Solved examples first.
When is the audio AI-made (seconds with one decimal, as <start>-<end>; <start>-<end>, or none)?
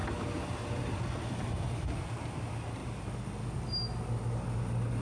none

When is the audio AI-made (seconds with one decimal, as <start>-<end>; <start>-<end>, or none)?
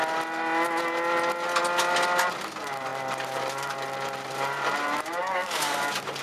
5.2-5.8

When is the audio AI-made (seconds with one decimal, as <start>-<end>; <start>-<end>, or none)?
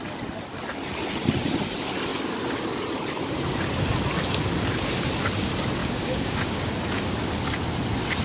5.8-6.7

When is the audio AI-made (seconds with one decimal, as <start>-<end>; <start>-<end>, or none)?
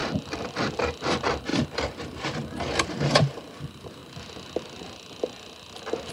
0.5-4.0